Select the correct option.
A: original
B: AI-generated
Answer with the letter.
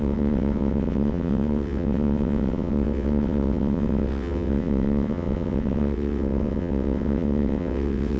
B